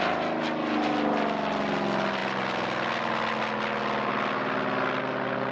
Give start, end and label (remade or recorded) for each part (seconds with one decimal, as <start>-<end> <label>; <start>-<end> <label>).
0.0-5.5 recorded